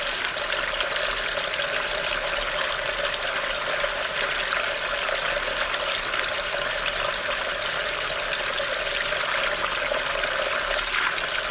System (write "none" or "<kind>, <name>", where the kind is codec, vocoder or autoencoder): none